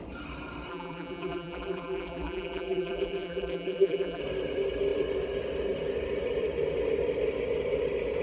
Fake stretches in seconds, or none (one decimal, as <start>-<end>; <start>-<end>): 0.7-4.2